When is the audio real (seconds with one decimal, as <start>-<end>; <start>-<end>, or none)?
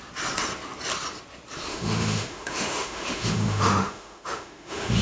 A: 0.0-1.7